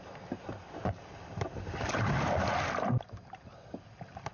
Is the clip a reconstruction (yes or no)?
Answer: no